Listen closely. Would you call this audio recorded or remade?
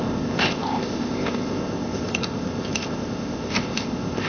remade